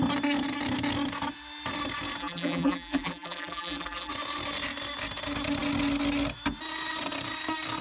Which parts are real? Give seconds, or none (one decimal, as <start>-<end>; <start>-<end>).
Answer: 0.0-2.2; 4.1-7.8